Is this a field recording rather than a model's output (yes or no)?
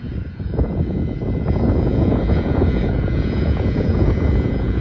no